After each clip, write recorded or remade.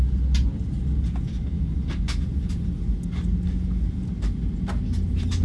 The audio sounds recorded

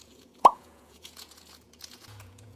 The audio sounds remade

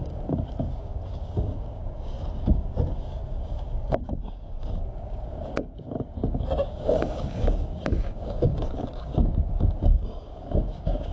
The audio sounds remade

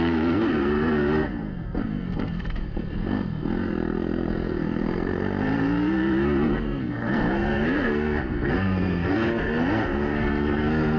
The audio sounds remade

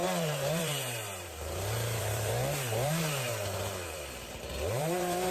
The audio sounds remade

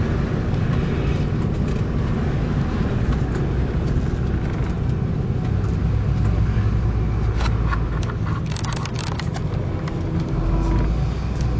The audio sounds recorded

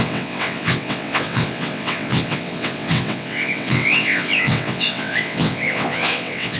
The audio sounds remade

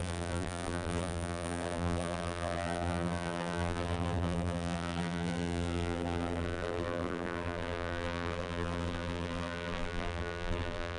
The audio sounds remade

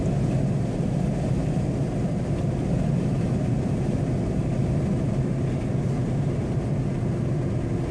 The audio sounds recorded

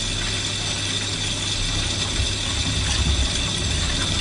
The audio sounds recorded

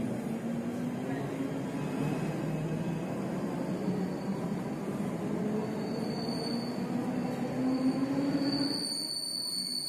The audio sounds recorded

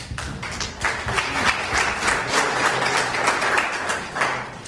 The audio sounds recorded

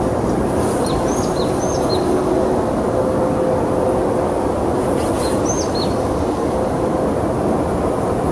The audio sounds recorded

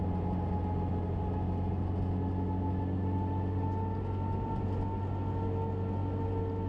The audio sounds recorded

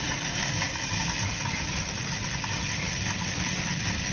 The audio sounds recorded